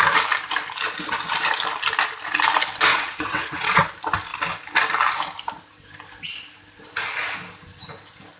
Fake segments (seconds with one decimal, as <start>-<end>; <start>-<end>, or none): 2.9-3.8